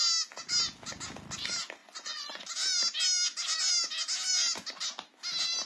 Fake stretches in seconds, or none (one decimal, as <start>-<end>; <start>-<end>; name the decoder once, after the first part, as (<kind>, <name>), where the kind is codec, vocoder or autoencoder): 1.8-2.4 (vocoder, Vocos)